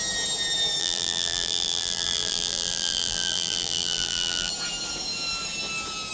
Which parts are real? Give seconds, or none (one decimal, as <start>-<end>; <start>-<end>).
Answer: 0.0-0.8; 4.5-6.1